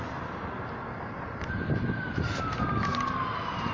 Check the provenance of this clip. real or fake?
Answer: real